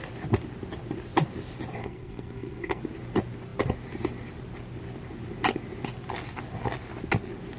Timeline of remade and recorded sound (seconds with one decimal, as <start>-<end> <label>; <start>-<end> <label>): 0.0-1.8 recorded; 1.8-2.8 remade; 2.8-7.6 recorded